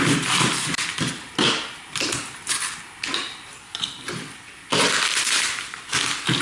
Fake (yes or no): no